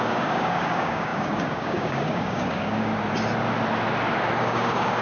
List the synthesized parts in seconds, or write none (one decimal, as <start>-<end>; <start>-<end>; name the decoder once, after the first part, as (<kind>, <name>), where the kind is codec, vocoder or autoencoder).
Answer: 0.0-2.9 (codec, DAC); 4.4-5.0

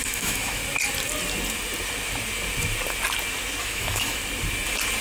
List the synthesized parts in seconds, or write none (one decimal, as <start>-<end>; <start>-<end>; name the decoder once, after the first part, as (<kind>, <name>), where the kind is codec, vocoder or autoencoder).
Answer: 0.0-0.6 (autoencoder, DAC-VAE); 3.6-4.2

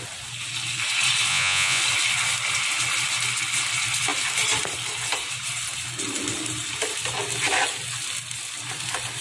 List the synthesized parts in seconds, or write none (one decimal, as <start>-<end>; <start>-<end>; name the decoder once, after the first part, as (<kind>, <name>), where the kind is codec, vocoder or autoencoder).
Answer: 1.3-1.8 (vocoder, Vocos)

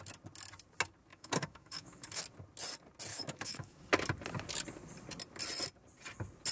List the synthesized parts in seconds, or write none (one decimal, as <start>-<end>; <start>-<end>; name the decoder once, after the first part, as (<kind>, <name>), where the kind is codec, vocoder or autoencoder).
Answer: 1.1-2.2 (autoencoder, DAC-VAE); 3.1-3.8